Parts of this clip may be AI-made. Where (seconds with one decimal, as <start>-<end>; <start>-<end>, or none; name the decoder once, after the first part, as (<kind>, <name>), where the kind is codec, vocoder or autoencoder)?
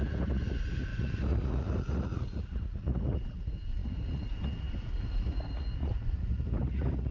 0.0-7.1 (vocoder, Vocos)